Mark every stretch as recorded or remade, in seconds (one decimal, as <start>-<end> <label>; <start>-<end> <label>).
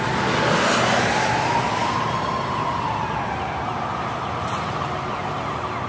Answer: 0.0-5.9 recorded